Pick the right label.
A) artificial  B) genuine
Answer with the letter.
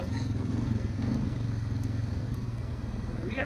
A